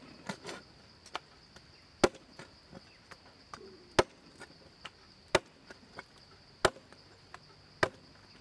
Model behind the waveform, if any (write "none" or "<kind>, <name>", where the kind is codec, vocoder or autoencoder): none